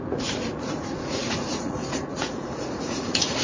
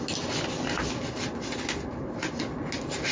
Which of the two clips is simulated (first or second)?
first